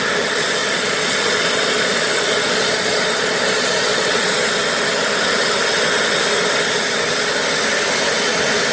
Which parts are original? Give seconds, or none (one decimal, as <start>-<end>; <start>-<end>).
0.0-0.6; 4.4-8.7